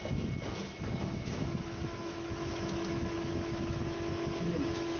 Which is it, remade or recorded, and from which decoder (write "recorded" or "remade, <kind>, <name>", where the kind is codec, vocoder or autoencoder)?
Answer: remade, autoencoder, DAC-VAE